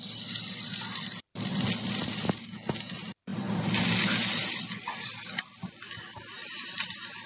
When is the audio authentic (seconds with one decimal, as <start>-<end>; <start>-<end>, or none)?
3.3-4.7; 6.4-7.3